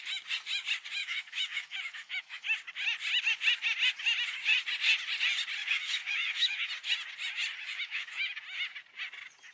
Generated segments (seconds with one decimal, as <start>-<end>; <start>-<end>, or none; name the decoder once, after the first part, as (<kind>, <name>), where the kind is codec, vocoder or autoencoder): 1.0-2.4 (autoencoder, DAC-VAE); 5.6-6.7; 7.6-8.4